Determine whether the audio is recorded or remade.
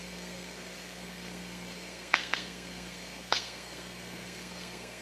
remade